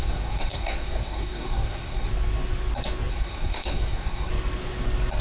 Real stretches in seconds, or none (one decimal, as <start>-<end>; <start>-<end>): 2.1-3.1; 4.3-5.2